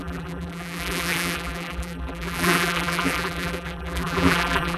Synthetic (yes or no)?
yes